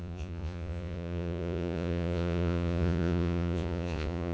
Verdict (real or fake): fake